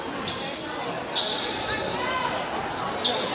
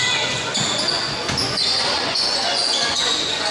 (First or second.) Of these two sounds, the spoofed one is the second